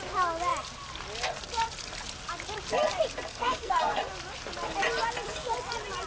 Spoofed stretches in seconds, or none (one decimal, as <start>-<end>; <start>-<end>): 3.3-4.0